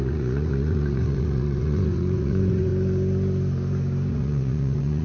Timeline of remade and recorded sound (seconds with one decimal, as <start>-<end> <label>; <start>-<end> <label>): 0.0-2.7 remade; 2.7-4.1 recorded; 4.1-5.0 remade